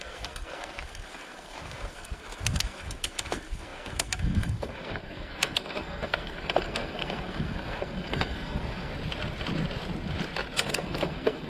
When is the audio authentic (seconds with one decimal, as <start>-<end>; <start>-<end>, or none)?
8.9-10.7